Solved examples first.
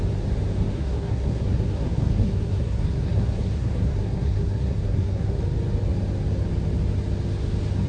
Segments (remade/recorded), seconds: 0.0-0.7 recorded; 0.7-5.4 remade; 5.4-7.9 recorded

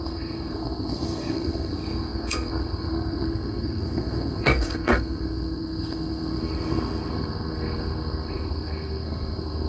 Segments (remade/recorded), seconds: 0.0-9.7 remade

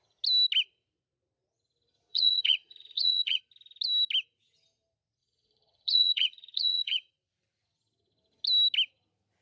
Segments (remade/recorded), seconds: 0.0-2.1 recorded; 2.1-3.4 remade; 3.4-5.2 recorded; 5.2-7.1 remade; 7.1-9.4 recorded

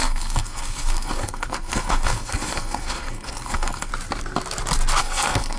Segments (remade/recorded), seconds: 0.0-3.9 remade; 3.9-5.0 recorded; 5.0-5.6 remade

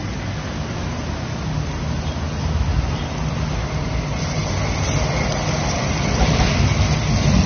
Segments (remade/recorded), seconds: 0.0-7.5 recorded

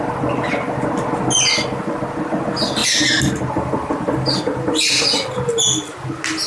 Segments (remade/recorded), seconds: 0.0-6.5 recorded

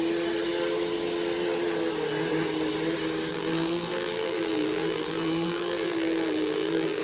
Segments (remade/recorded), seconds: 0.0-3.3 recorded; 3.3-7.0 remade

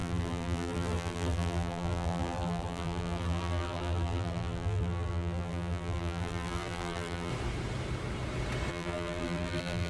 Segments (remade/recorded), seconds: 0.0-7.3 remade; 7.3-8.7 recorded; 8.7-9.9 remade